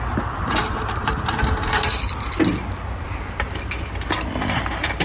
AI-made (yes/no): yes